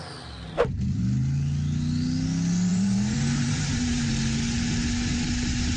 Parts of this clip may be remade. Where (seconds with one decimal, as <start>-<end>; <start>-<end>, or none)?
2.7-4.1